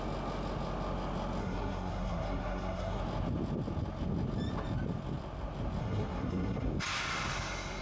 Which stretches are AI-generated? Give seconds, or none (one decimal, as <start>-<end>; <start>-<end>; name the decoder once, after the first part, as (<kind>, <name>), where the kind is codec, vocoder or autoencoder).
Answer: 1.4-3.0 (codec, SNAC); 5.8-6.7